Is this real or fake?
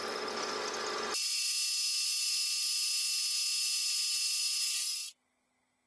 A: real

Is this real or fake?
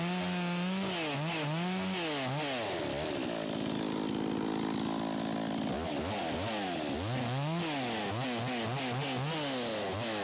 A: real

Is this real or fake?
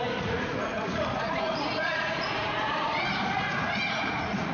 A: fake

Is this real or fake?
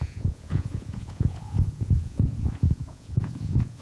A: fake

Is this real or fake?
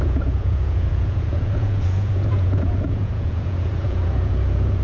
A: fake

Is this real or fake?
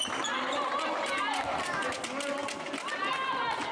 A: real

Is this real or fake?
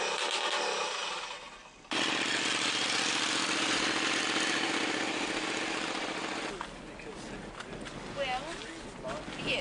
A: real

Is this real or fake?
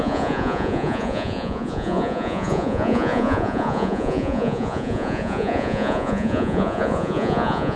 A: fake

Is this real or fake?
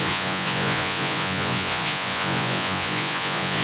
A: fake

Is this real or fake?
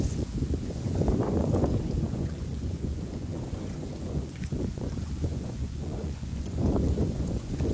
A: fake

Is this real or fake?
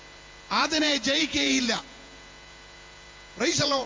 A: fake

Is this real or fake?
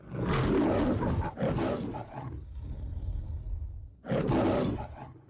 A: real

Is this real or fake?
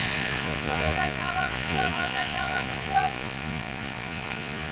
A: fake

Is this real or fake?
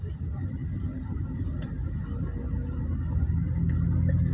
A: real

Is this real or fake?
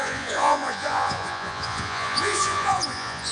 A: fake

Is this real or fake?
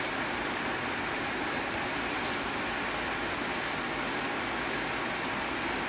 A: real